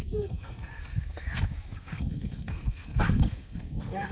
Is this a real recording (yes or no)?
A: no